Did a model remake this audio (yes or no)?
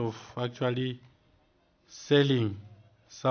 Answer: no